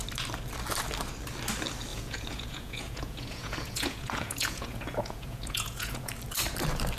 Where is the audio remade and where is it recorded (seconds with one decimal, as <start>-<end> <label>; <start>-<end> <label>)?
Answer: 0.0-1.9 recorded; 1.9-6.1 remade; 6.1-7.0 recorded